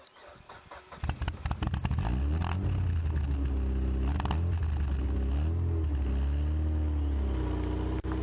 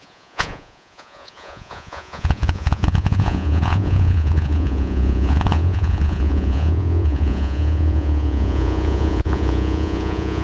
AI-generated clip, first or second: second